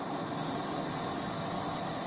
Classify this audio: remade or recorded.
recorded